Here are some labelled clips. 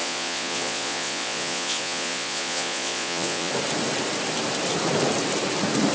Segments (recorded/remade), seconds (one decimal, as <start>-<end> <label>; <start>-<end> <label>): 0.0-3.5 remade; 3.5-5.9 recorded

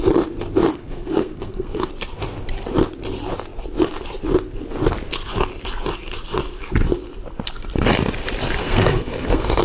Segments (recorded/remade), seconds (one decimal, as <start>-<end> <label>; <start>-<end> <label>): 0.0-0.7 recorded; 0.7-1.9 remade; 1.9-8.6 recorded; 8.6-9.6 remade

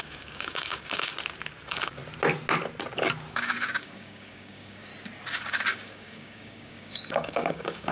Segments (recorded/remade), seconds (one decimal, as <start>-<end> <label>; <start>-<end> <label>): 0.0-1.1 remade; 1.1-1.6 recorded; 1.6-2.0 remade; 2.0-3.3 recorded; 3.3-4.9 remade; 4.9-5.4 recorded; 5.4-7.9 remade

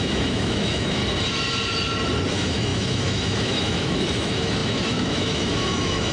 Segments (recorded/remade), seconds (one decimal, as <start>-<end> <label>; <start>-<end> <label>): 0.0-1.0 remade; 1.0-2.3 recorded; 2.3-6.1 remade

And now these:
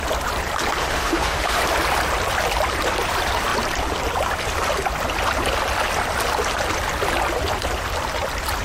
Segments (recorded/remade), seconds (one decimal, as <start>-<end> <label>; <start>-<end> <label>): 0.0-0.8 recorded; 0.8-1.6 remade; 1.6-8.6 recorded